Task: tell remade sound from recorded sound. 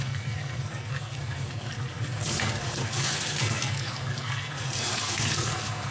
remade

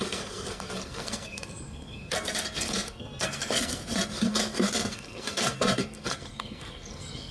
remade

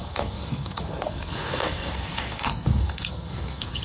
remade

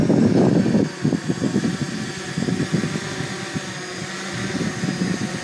recorded